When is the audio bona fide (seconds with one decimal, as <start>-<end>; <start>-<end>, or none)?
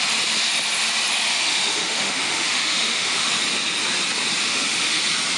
0.0-1.3; 3.3-4.4; 5.0-5.4